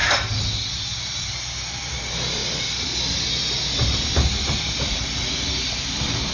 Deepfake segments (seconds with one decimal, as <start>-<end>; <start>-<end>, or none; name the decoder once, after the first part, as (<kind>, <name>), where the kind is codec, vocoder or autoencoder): none